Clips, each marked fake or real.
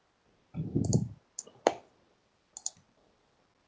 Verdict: real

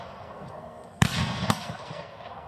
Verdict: fake